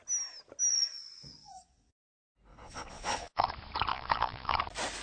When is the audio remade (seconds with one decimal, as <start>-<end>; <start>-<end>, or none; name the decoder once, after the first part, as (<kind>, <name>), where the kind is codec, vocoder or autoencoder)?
0.7-1.9 (vocoder, Vocos); 2.5-3.5; 3.9-4.6